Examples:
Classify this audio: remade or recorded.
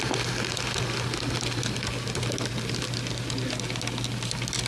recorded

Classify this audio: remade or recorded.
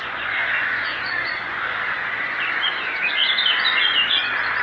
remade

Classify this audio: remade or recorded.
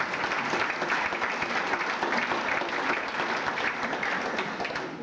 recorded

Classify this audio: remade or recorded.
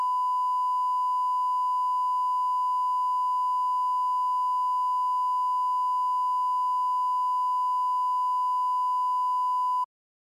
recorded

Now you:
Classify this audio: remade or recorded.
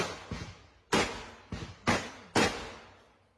recorded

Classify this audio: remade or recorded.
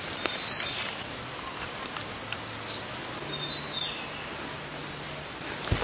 recorded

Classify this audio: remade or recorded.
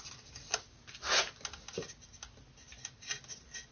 recorded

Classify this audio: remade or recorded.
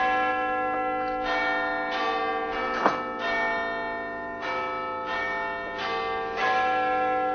recorded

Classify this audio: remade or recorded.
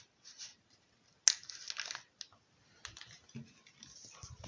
recorded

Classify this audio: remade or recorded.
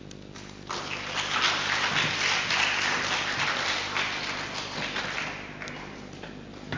recorded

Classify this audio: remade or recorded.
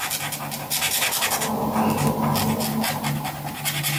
recorded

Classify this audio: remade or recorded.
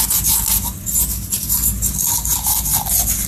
recorded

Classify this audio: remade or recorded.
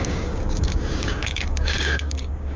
remade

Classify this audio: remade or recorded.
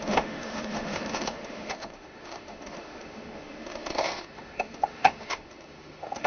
remade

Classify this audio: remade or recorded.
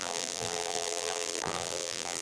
remade